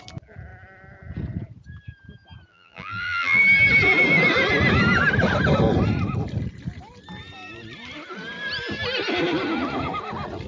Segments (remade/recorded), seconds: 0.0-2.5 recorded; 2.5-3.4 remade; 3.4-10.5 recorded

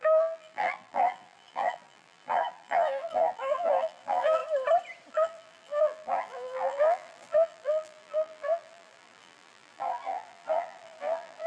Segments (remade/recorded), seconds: 0.0-4.4 remade; 4.4-5.1 recorded; 5.1-11.5 remade

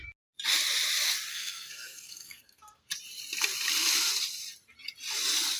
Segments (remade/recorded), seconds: 0.0-1.3 recorded; 1.3-2.9 remade; 2.9-5.6 recorded

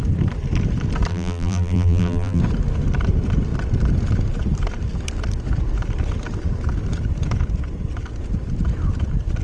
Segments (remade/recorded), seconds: 0.0-1.1 recorded; 1.1-2.4 remade; 2.4-9.4 recorded

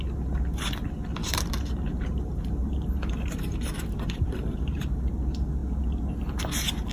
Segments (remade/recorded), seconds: 0.0-1.2 recorded; 1.2-5.1 remade; 5.1-6.9 recorded

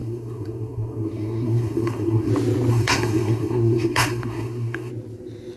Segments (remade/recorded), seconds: 0.0-2.3 remade; 2.3-2.7 recorded; 2.7-4.9 remade; 4.9-5.6 recorded

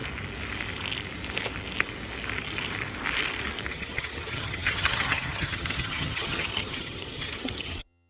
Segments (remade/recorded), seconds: 0.0-3.7 recorded; 3.7-8.1 remade

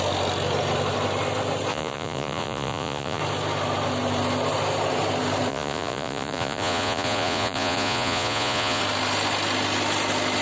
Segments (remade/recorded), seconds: 0.0-1.7 recorded; 1.7-3.2 remade; 3.2-5.5 recorded; 5.5-8.8 remade; 8.8-10.4 recorded